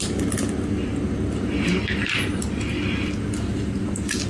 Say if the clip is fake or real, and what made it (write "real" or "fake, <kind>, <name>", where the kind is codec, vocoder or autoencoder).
real